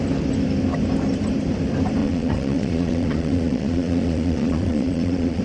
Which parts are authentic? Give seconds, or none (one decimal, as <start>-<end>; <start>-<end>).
0.0-2.0